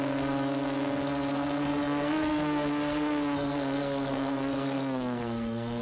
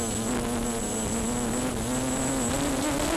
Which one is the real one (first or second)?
second